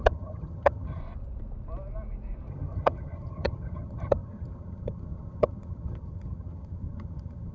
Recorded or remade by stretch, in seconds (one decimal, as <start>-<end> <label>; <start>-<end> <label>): 0.0-1.0 remade; 1.0-2.5 recorded; 2.5-7.5 remade